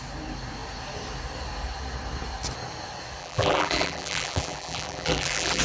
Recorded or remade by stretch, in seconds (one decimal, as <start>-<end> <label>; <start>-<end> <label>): 0.0-3.2 recorded; 3.2-5.6 remade